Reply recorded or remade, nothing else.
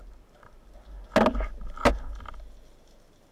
recorded